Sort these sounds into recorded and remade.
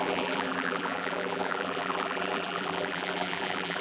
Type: remade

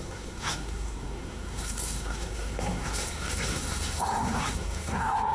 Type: remade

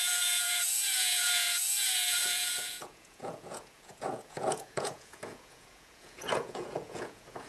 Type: remade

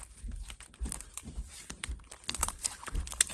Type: remade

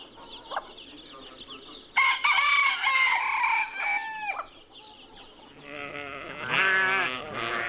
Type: recorded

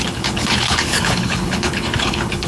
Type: remade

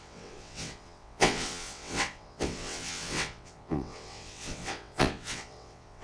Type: remade